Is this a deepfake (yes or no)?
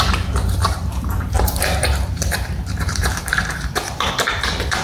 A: yes